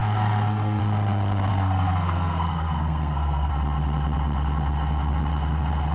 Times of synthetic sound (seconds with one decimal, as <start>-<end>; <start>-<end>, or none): 0.0-0.8; 1.5-3.5